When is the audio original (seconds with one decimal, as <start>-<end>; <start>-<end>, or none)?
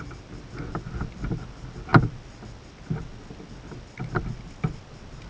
0.0-5.3